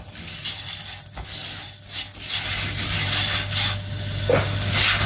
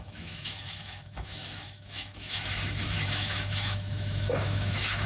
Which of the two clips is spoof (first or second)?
second